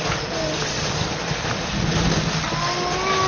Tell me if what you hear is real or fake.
fake